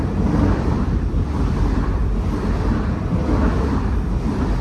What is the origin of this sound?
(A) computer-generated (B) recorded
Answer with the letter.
B